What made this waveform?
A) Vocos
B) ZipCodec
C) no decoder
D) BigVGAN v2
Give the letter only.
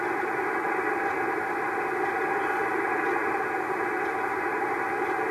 C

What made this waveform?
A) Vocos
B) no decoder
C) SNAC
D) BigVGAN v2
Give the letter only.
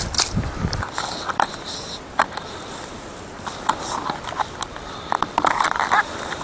D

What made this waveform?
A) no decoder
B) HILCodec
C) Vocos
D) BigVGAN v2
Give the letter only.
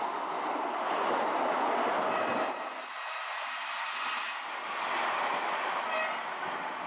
A